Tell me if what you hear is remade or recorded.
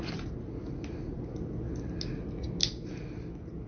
recorded